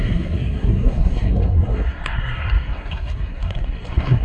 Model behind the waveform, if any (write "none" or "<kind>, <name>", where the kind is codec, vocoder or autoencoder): codec, SNAC